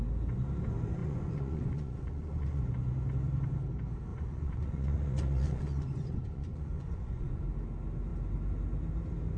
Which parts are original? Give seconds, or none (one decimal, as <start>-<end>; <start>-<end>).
0.0-1.0; 2.6-4.1; 7.4-9.4